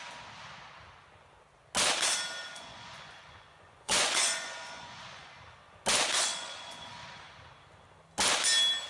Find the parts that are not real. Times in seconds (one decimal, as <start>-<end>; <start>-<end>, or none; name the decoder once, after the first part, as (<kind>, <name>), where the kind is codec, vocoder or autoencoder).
2.5-5.3 (vocoder, Vocos); 6.1-6.9